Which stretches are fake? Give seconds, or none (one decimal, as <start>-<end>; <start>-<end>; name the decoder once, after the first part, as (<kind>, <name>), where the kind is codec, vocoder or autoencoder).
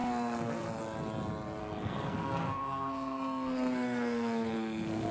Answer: 0.0-0.8 (codec, SNAC); 1.6-5.1